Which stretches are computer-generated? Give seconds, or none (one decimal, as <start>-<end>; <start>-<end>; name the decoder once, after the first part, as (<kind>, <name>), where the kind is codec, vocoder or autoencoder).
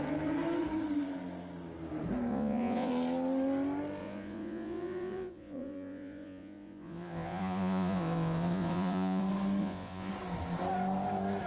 2.3-2.9 (vocoder, Vocos); 4.0-9.2; 9.6-10.1